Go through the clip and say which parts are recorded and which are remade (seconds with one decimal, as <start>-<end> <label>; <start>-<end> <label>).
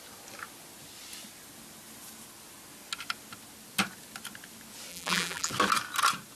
0.0-4.9 recorded; 4.9-5.5 remade; 5.5-6.4 recorded